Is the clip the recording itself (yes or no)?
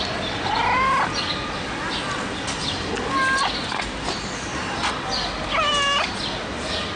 yes